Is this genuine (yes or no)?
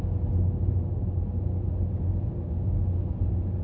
yes